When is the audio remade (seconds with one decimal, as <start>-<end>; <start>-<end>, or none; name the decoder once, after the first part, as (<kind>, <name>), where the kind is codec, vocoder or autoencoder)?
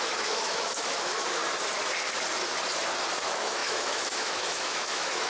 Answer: 0.0-1.4 (autoencoder, DAC-VAE); 3.2-5.3